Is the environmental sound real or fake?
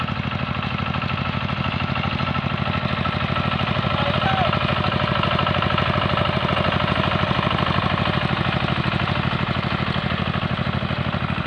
real